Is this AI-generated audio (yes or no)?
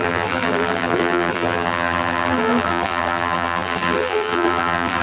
yes